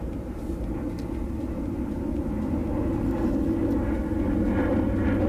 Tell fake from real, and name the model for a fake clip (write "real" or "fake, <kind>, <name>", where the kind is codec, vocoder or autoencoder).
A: real